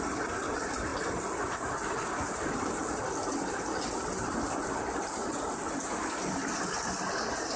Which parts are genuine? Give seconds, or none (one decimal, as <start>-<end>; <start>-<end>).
0.0-7.6